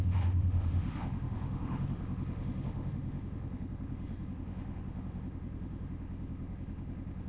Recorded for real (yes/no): no